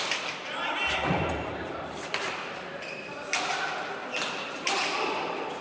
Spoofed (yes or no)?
no